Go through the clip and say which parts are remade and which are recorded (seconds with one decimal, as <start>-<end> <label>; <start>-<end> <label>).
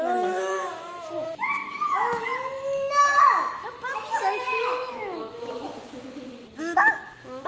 0.0-5.7 remade; 5.7-6.6 recorded; 6.6-7.5 remade